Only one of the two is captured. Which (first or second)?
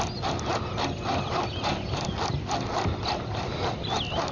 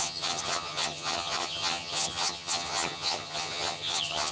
first